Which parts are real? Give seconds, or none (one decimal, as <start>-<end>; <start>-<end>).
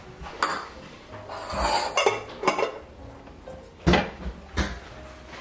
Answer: 0.0-0.5; 1.0-5.4